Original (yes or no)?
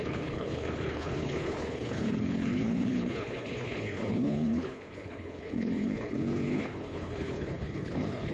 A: no